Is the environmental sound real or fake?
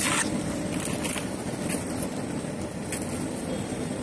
real